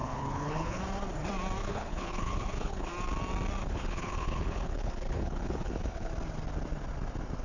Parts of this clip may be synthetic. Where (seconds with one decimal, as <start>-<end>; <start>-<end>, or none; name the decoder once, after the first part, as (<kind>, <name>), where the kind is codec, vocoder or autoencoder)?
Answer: 0.0-0.8 (codec, HILCodec); 1.6-2.9; 3.6-6.1